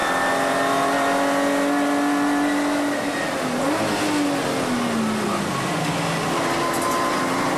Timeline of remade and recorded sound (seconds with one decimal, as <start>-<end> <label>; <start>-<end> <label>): 0.0-7.6 recorded